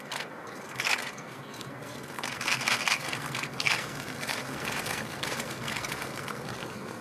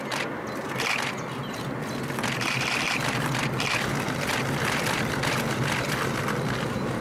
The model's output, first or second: first